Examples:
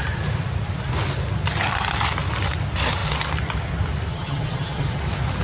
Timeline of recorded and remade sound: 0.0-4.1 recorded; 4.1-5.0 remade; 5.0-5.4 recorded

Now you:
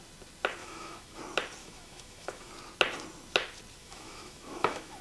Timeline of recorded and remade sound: 0.0-0.6 recorded; 0.6-1.2 remade; 1.2-1.6 recorded; 1.6-2.5 remade; 2.5-3.8 recorded; 3.8-5.0 remade

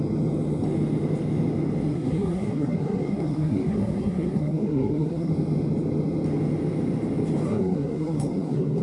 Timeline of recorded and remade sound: 0.0-1.9 recorded; 1.9-5.3 remade; 5.3-7.5 recorded; 7.5-8.8 remade